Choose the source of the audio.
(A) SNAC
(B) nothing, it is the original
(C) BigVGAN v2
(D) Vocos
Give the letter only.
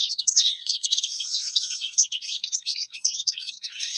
A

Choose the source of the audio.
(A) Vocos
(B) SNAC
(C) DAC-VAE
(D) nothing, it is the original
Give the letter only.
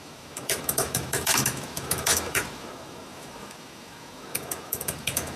C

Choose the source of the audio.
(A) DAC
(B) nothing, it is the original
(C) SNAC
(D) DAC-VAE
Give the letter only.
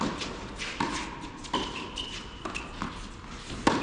B